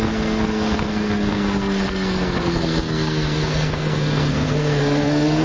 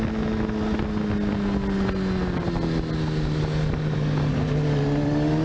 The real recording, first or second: second